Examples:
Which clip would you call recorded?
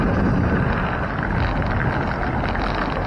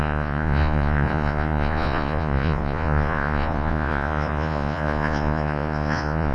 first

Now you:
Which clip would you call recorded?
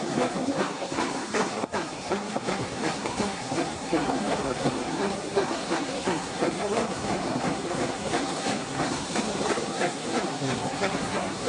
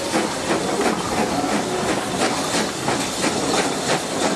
second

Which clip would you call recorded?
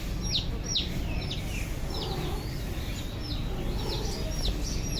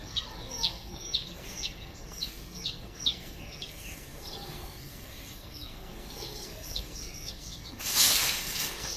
first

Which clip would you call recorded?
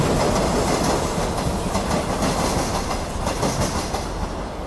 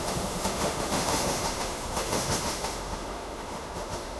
first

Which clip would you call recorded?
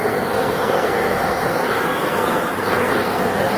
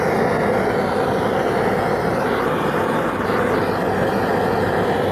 second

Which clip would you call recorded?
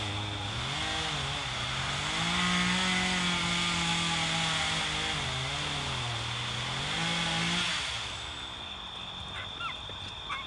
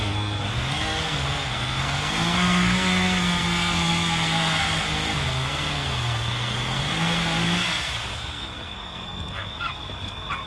first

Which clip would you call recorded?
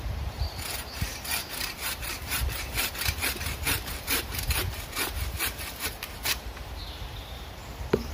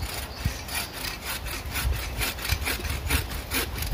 second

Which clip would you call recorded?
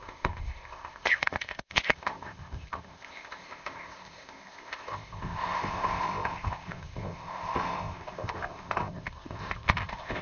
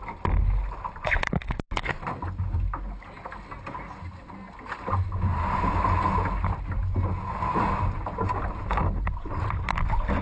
second